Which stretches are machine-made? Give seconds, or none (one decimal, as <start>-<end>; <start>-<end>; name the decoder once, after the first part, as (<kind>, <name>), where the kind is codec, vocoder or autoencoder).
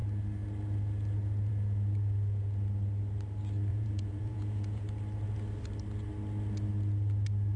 3.7-4.8 (vocoder, Vocos)